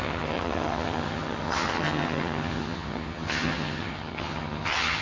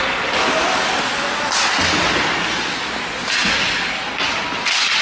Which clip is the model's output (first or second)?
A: first